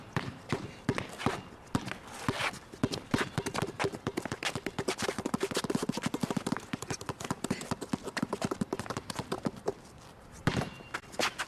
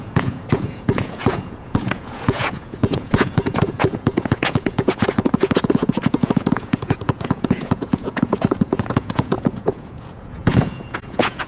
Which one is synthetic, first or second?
second